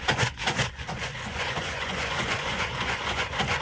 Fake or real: fake